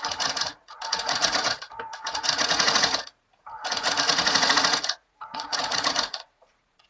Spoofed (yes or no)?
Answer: yes